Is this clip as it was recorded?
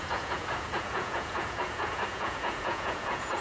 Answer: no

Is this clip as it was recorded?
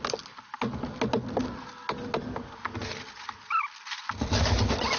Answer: yes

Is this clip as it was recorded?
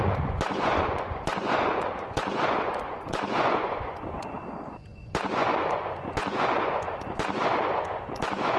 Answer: no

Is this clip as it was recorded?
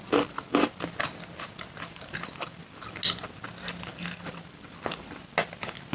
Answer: yes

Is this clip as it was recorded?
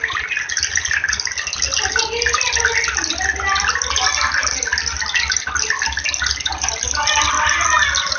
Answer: yes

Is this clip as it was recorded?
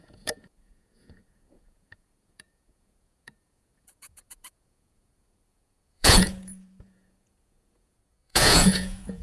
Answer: no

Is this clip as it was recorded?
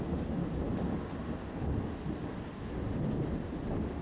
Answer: yes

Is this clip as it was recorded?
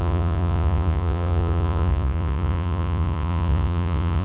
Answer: no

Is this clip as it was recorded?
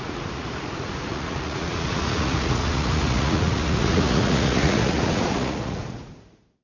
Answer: no